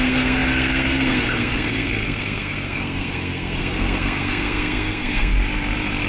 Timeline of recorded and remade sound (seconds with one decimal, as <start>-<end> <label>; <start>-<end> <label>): 0.0-5.3 remade; 5.3-6.1 recorded